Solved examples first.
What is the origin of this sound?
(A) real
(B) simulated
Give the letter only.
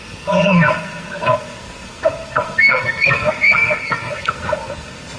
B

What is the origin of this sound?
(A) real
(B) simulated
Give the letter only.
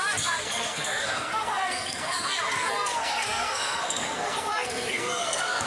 B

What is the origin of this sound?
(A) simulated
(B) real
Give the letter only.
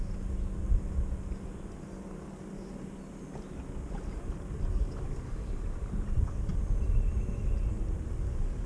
B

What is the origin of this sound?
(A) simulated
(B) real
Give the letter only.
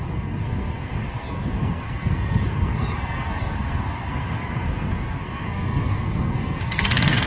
A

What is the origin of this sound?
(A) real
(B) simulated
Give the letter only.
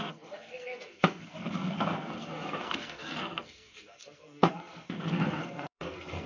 B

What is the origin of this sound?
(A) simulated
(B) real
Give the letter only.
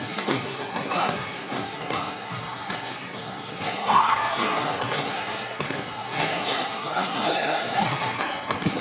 A